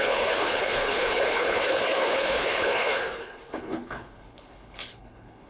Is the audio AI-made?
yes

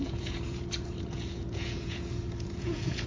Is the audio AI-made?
yes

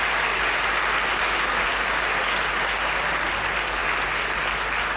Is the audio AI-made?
no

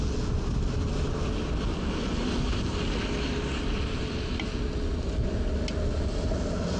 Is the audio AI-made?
no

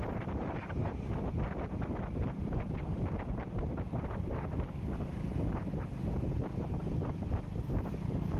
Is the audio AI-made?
no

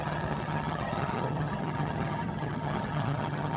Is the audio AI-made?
yes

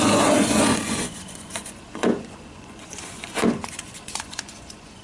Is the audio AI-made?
yes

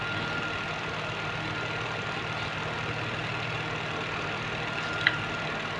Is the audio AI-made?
no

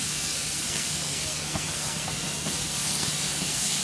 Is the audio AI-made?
yes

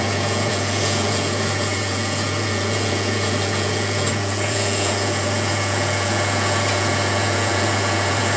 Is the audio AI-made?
yes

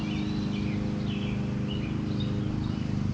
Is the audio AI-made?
no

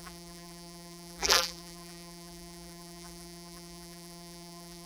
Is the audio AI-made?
yes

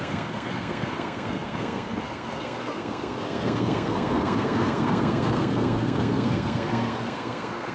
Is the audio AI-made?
yes